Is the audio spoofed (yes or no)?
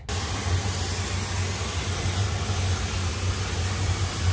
no